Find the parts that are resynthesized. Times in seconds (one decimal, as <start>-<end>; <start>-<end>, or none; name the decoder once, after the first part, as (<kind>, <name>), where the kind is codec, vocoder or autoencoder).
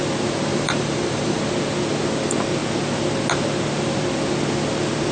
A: 0.5-1.4 (vocoder, BigVGAN v2)